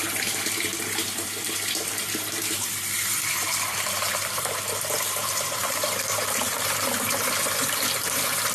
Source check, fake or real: fake